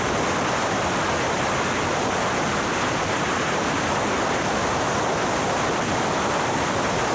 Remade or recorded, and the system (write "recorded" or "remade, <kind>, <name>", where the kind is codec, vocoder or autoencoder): recorded